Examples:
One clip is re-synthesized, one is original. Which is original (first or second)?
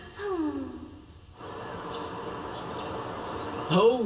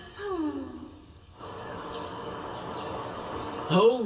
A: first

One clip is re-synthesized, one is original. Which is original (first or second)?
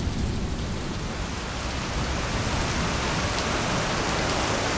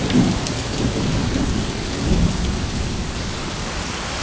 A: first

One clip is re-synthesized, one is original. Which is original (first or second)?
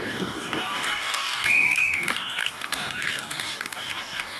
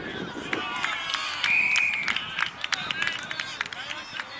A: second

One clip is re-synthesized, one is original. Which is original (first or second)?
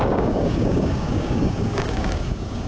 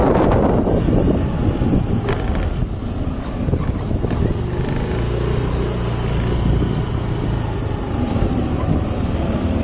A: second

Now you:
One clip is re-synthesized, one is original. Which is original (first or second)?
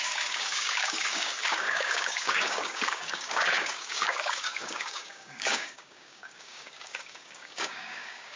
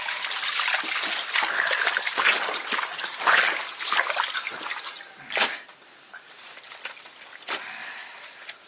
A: second